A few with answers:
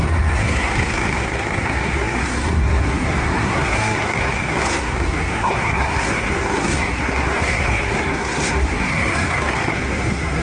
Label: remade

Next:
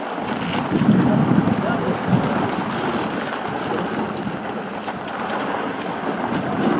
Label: recorded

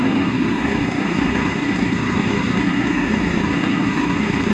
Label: remade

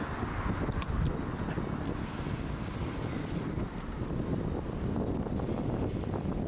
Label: recorded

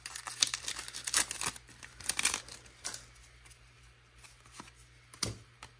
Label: recorded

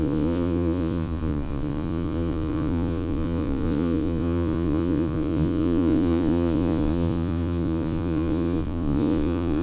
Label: remade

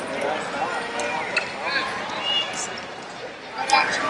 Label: recorded